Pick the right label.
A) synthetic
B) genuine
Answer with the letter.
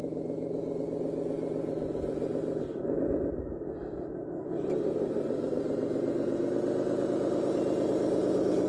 B